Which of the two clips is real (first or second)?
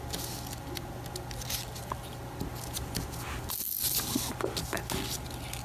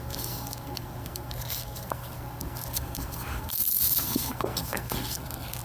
first